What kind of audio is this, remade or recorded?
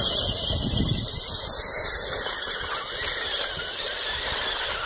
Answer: recorded